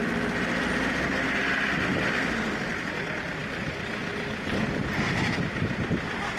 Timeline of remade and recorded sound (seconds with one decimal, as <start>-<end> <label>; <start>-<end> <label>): 0.0-3.4 recorded; 3.4-4.1 remade; 4.1-4.8 recorded; 4.8-5.7 remade; 5.7-6.4 recorded

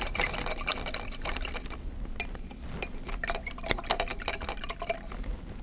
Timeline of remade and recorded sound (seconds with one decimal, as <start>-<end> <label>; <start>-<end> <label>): 0.0-4.1 recorded; 4.1-4.7 remade; 4.7-5.6 recorded